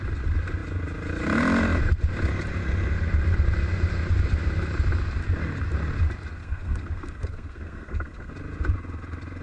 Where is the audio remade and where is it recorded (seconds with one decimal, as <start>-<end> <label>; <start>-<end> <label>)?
0.0-6.4 recorded; 6.4-8.3 remade; 8.3-9.4 recorded